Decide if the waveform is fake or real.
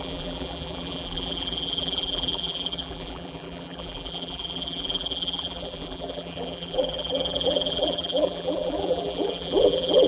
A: fake